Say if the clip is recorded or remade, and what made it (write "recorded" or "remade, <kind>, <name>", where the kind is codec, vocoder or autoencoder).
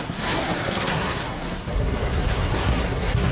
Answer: remade, codec, SNAC